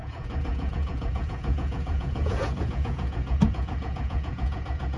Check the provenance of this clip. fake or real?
fake